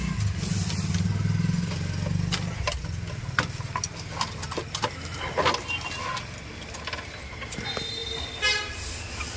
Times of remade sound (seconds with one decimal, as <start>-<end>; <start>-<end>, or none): none